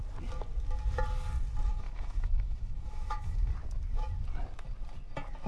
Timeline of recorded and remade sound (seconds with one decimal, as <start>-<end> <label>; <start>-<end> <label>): 0.0-1.7 recorded; 1.7-3.5 remade; 3.5-5.5 recorded